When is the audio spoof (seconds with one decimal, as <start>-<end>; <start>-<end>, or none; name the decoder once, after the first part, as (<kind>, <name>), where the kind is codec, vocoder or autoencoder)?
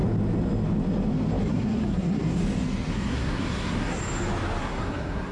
1.4-2.4 (codec, SNAC); 2.9-4.0; 4.6-5.3